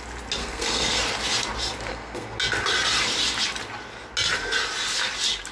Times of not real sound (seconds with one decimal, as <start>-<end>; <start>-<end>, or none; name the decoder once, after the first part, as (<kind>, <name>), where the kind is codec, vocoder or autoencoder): 0.4-1.0 (codec, SNAC); 1.9-2.4